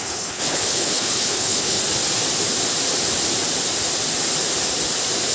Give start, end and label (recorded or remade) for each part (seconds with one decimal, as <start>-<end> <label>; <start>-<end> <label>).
0.0-1.8 remade; 1.8-5.3 recorded